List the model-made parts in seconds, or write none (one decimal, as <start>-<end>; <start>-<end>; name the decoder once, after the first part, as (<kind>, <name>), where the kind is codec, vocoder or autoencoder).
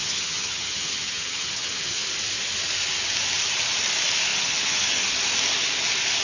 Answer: 0.0-2.0 (vocoder, HiFi-GAN); 4.3-5.1